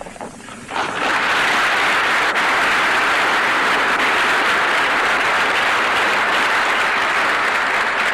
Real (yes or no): no